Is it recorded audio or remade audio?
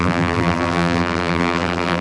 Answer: remade